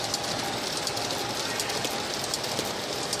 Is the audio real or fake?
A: real